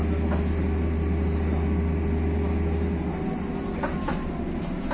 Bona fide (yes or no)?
yes